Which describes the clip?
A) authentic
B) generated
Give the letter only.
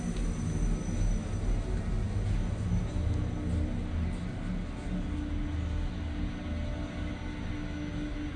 A